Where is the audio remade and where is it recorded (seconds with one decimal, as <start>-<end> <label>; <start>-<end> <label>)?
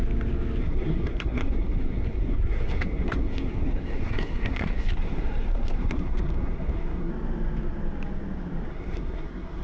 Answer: 0.0-0.6 recorded; 0.6-7.1 remade; 7.1-8.7 recorded; 8.7-9.6 remade